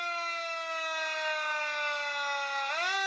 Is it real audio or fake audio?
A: real